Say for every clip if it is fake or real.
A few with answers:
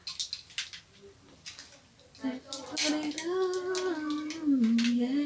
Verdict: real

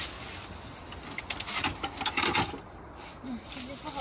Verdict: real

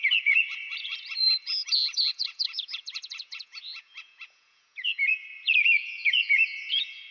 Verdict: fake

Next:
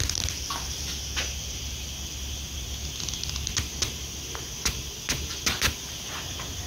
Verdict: real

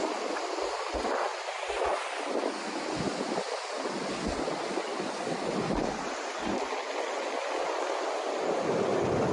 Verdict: real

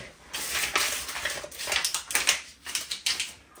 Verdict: real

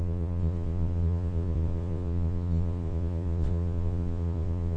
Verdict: fake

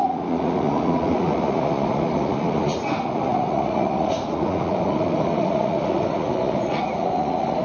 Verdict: fake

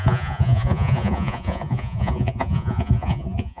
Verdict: fake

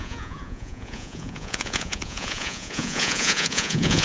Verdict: fake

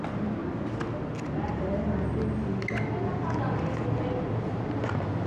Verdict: real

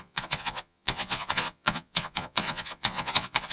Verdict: fake